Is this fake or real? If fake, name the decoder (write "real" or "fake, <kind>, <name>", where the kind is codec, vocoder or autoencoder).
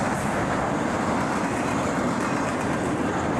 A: fake, vocoder, BigVGAN v2